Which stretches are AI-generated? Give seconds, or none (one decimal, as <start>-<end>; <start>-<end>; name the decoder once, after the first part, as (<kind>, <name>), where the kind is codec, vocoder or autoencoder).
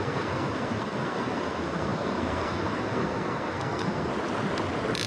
0.0-4.1 (codec, SNAC)